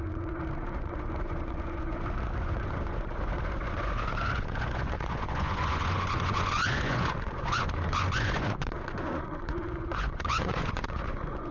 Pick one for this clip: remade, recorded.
remade